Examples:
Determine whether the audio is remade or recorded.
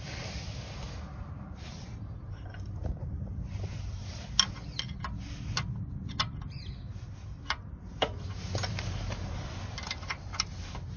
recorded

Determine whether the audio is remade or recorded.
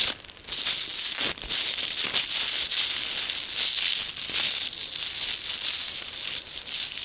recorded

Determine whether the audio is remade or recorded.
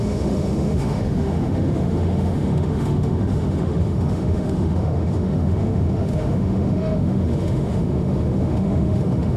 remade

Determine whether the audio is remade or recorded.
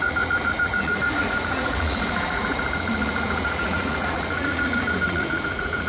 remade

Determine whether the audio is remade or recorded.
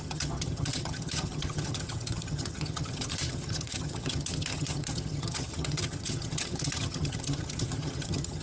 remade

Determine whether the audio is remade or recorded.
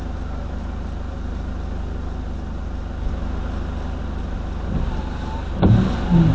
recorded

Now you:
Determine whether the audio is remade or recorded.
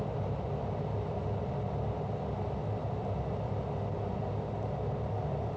recorded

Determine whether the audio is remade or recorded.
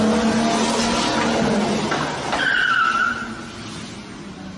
recorded